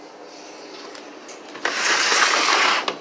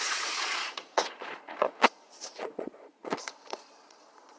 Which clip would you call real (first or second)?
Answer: first